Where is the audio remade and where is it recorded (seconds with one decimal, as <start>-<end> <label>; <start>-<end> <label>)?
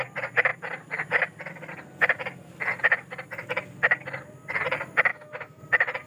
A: 0.0-5.1 recorded; 5.1-5.6 remade; 5.6-6.1 recorded